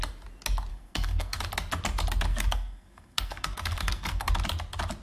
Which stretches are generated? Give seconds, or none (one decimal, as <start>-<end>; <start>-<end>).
0.7-1.4; 2.3-4.3